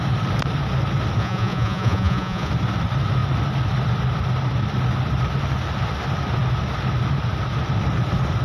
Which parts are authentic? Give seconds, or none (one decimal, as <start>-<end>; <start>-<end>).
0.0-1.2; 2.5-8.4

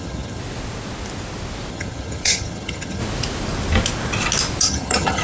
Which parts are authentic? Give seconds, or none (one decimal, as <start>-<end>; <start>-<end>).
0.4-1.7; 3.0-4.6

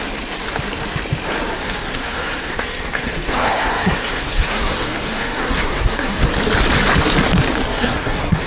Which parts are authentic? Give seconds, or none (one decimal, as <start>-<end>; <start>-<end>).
0.0-1.5; 6.2-7.7